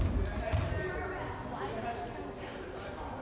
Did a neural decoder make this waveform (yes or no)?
no